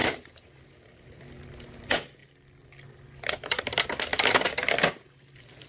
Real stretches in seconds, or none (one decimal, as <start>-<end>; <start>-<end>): 1.2-5.7